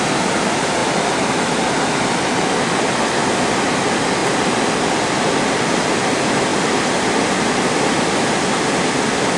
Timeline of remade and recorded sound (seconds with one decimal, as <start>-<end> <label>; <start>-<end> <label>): 0.0-0.8 recorded; 0.8-2.2 remade; 2.2-6.5 recorded; 6.5-8.3 remade; 8.3-9.4 recorded